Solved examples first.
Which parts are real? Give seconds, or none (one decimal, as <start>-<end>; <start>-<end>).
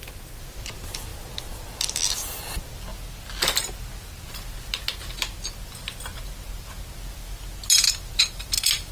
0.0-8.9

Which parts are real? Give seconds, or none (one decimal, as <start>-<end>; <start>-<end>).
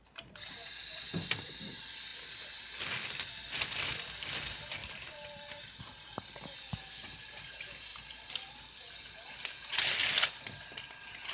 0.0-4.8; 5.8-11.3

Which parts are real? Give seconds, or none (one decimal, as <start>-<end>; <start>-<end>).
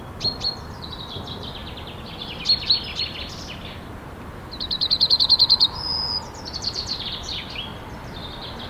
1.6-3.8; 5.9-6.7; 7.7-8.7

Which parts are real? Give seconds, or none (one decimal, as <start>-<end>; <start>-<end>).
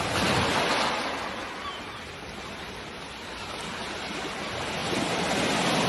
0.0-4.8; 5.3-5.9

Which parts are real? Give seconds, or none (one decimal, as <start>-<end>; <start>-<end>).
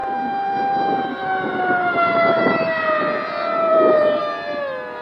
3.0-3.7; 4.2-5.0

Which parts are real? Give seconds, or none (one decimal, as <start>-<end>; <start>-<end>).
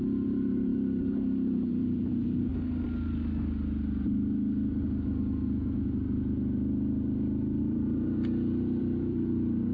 2.5-7.6